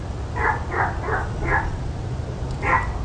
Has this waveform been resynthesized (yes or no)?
no